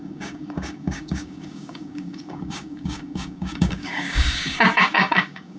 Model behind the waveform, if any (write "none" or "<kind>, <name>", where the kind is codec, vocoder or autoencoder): codec, DAC